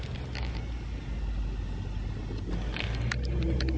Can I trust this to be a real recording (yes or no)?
yes